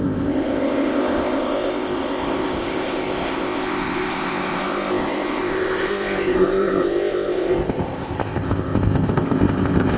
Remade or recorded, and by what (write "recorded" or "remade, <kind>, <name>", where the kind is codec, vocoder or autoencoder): remade, codec, ZipCodec